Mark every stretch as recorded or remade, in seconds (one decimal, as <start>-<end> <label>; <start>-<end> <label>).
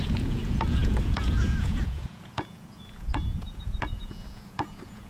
0.0-5.1 remade